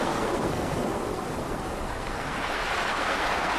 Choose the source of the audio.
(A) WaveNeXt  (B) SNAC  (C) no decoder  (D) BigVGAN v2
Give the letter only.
B